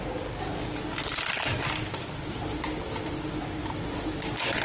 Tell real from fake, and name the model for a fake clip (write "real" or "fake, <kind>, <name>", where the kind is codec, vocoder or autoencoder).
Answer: real